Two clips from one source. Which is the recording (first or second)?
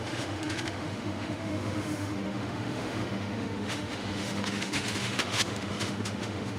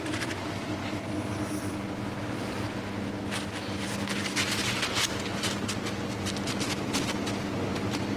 second